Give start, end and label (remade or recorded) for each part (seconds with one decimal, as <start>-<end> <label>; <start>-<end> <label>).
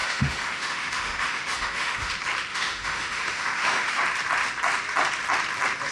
0.0-2.1 remade; 2.1-2.5 recorded; 2.5-4.0 remade; 4.0-5.9 recorded